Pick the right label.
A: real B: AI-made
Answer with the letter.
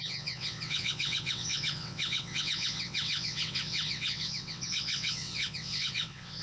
B